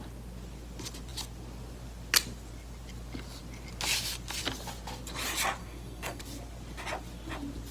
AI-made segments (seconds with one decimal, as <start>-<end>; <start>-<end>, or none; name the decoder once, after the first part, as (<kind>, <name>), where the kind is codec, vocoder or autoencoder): 5.6-6.2 (codec, SNAC)